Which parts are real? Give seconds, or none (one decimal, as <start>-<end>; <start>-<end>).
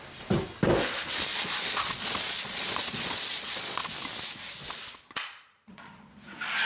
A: 0.0-1.3; 3.9-4.6; 6.1-6.6